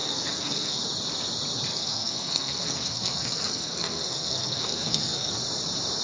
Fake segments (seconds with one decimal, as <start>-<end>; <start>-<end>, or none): 0.0-0.8; 1.7-5.3